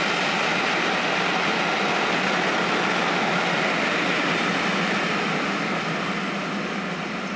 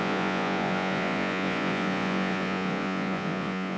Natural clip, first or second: first